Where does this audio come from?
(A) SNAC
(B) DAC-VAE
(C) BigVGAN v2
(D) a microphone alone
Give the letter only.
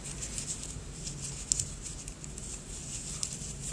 D